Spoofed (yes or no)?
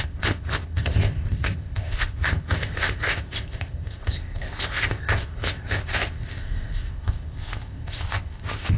yes